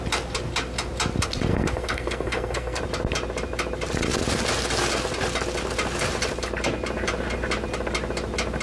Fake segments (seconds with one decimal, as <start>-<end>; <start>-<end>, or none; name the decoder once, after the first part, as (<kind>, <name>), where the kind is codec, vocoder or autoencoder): 1.5-2.8 (codec, SNAC)